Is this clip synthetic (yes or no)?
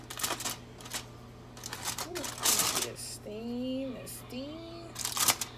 no